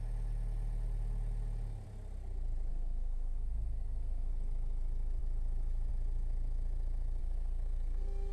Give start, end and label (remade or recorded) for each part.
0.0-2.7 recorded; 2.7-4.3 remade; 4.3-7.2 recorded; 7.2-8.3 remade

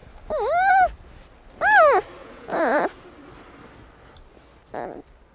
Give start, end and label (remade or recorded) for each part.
0.0-2.2 recorded; 2.2-2.8 remade; 2.8-5.3 recorded

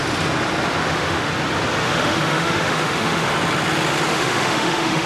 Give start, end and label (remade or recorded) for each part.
0.0-0.8 recorded; 0.8-1.3 remade; 1.3-1.8 recorded; 1.8-3.3 remade; 3.3-4.1 recorded; 4.1-5.1 remade

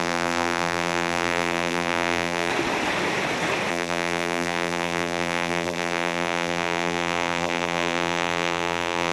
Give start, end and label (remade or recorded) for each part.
0.0-2.5 remade; 2.5-3.7 recorded; 3.7-9.1 remade